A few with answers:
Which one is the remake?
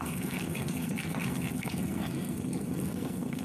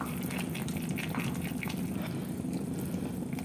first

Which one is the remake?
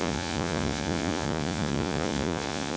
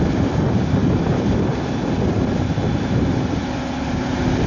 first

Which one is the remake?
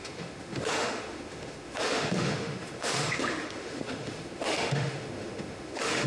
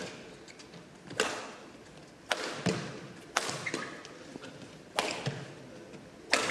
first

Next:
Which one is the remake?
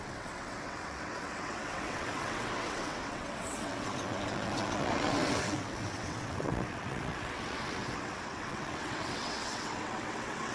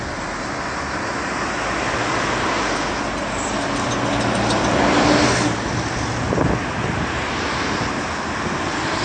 first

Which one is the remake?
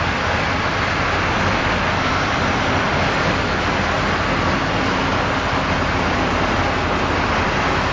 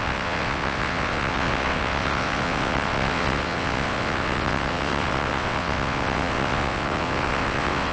second